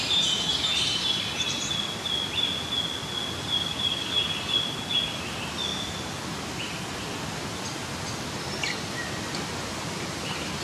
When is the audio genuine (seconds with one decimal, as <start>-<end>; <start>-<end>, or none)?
0.0-10.6